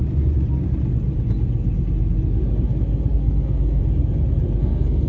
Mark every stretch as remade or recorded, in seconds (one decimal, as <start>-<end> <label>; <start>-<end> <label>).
0.0-3.1 recorded; 3.1-3.8 remade; 3.8-4.6 recorded; 4.6-5.1 remade